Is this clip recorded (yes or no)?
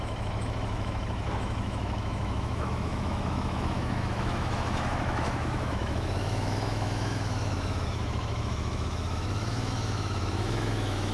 no